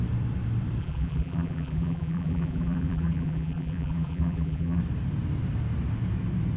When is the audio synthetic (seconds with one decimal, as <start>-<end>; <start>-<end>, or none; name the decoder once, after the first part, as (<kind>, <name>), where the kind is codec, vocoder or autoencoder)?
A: 0.8-4.8 (vocoder, BigVGAN v2)